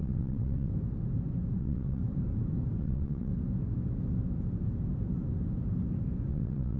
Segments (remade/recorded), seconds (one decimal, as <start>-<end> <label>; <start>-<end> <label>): 0.0-0.7 remade; 0.7-1.6 recorded; 1.6-2.0 remade; 2.0-2.8 recorded; 2.8-3.3 remade; 3.3-6.3 recorded; 6.3-6.8 remade